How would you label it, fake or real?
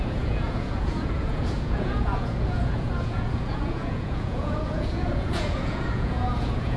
fake